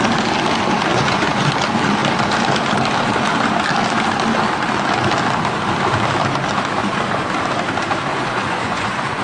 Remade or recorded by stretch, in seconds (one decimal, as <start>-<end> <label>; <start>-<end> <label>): 0.0-0.9 recorded; 0.9-1.5 remade; 1.5-6.8 recorded; 6.8-7.3 remade; 7.3-8.1 recorded; 8.1-9.2 remade

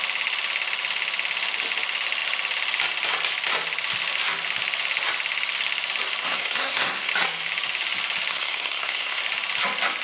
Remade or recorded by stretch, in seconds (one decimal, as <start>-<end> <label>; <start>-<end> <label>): 0.0-6.2 recorded; 6.2-7.1 remade; 7.1-8.3 recorded; 8.3-9.2 remade; 9.2-10.0 recorded

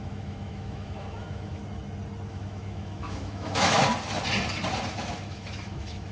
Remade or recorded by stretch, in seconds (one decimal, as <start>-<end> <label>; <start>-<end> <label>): 0.0-1.6 remade; 1.6-2.3 recorded; 2.3-3.8 remade; 3.8-4.9 recorded; 4.9-6.1 remade

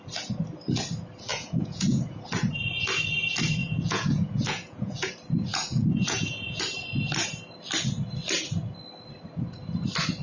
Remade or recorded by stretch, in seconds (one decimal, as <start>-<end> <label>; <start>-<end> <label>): 0.0-1.3 recorded; 1.3-2.2 remade; 2.2-3.6 recorded; 3.6-5.1 remade; 5.1-5.5 recorded; 5.5-6.6 remade; 6.6-10.2 recorded

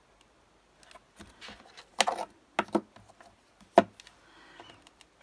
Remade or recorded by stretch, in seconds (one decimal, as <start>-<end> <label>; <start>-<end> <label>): 0.0-5.2 recorded

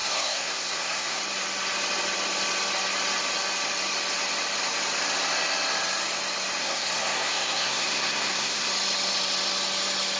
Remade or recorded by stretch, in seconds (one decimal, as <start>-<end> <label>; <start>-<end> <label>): 0.0-1.2 remade; 1.2-6.6 recorded; 6.6-8.7 remade; 8.7-10.2 recorded